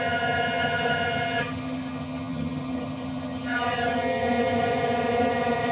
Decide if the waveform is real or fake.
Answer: fake